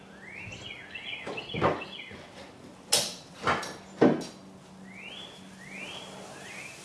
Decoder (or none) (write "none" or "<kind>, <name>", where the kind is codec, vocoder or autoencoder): none